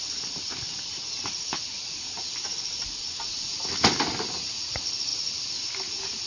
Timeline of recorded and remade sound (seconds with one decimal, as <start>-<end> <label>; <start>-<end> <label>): 0.0-6.3 recorded